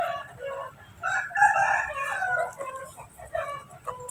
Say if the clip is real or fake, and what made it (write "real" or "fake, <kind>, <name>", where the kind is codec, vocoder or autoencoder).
real